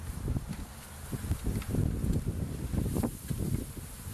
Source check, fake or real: real